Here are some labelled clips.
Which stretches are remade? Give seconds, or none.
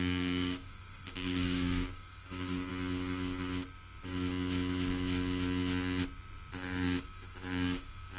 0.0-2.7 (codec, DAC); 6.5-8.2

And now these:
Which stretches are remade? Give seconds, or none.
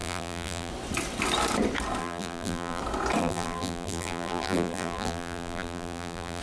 0.0-0.7 (vocoder, BigVGAN v2); 2.0-2.8; 3.2-6.4